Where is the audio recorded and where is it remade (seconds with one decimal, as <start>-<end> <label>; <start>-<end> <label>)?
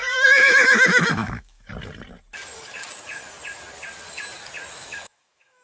0.0-1.7 remade; 1.7-4.7 recorded; 4.7-5.6 remade